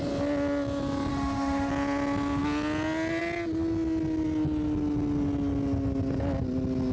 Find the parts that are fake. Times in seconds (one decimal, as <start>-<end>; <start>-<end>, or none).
1.1-1.7